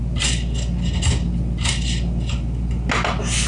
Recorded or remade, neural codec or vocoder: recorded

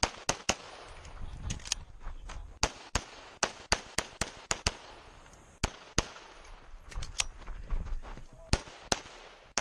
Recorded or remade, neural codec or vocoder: recorded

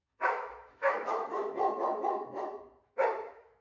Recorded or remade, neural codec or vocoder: remade, autoencoder, DAC-VAE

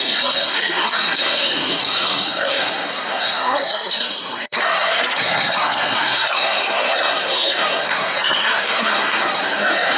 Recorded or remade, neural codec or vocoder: remade, codec, SNAC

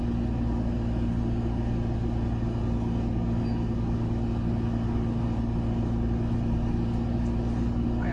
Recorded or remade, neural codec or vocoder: recorded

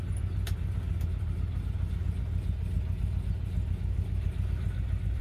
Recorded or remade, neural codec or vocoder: recorded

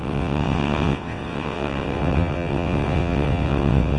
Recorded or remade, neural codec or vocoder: remade, vocoder, WaveNeXt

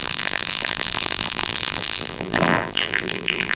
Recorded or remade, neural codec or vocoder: remade, vocoder, BigVGAN v2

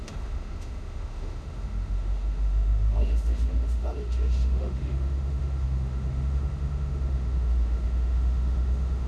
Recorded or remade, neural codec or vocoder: remade, autoencoder, DAC-VAE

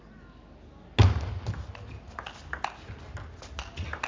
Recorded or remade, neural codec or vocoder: recorded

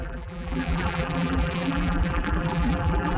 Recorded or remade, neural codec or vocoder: remade, vocoder, BigVGAN v2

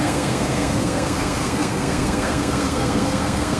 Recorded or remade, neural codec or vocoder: remade, codec, SNAC